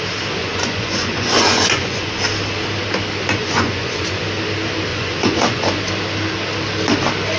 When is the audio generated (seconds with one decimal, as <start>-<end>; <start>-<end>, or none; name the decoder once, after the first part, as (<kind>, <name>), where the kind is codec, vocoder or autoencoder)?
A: 0.4-2.1 (vocoder, Vocos); 3.4-4.2; 4.9-5.8